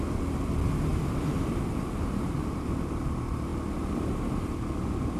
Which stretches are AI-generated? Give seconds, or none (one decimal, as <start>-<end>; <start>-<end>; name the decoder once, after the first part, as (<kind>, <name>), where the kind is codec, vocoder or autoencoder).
0.9-2.8 (vocoder, BigVGAN v2)